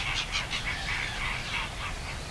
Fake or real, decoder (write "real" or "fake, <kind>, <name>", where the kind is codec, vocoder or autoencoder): real